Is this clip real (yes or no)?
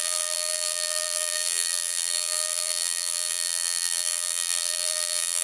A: no